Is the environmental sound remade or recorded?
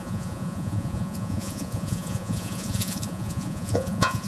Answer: remade